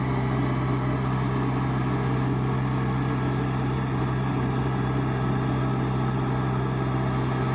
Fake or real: real